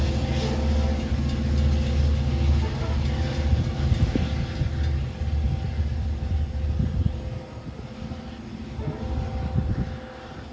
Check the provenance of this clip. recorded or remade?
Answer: recorded